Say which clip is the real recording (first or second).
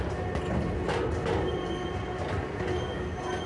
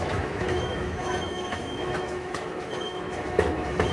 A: first